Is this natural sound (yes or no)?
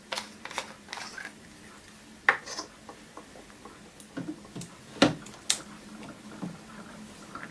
yes